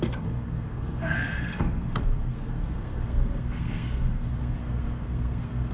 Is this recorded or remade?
remade